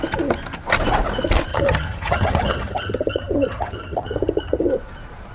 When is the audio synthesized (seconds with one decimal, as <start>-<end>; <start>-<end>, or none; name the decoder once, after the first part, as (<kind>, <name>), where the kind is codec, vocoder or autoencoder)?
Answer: 1.5-4.7 (vocoder, HiFi-GAN)